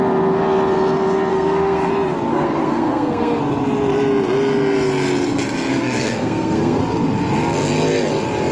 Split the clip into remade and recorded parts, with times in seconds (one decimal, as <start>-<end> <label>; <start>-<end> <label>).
0.0-1.3 recorded; 1.3-1.9 remade; 1.9-2.3 recorded; 2.3-3.4 remade; 3.4-5.7 recorded; 5.7-6.8 remade; 6.8-8.5 recorded